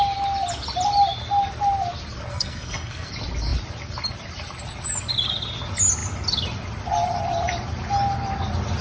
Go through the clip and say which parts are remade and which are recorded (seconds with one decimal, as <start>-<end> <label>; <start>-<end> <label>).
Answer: 0.0-2.3 recorded; 2.3-3.1 remade; 3.1-8.8 recorded